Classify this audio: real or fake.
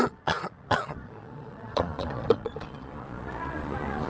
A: fake